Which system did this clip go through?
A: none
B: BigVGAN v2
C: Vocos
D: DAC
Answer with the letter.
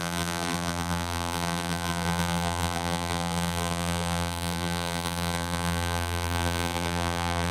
B